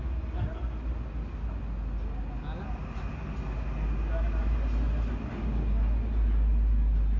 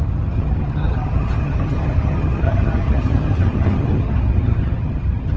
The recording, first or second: first